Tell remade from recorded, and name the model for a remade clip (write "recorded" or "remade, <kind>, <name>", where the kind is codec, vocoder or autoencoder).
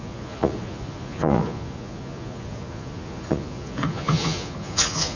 remade, vocoder, Vocos